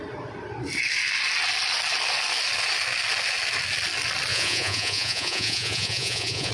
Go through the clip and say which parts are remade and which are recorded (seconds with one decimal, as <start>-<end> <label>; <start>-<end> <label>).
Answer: 0.0-4.3 recorded; 4.3-6.5 remade